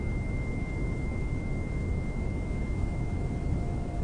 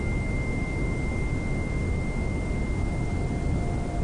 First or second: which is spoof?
first